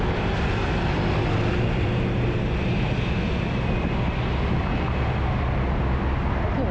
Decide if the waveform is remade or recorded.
recorded